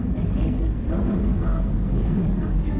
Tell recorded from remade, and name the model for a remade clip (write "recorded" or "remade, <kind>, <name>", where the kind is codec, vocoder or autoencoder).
remade, codec, SNAC